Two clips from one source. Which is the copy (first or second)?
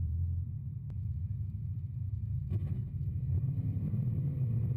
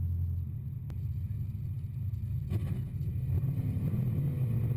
first